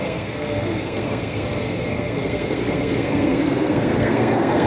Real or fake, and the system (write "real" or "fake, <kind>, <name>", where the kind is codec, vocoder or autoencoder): fake, codec, SNAC